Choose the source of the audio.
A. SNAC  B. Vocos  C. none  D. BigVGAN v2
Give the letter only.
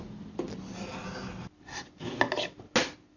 C